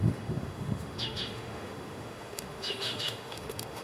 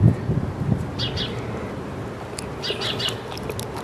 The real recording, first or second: second